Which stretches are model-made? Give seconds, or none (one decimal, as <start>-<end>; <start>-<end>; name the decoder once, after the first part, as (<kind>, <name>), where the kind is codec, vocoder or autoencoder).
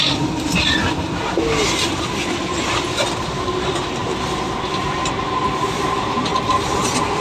0.0-4.0 (vocoder, BigVGAN v2); 5.2-6.3